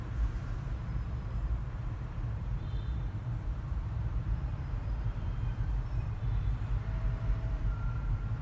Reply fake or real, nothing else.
fake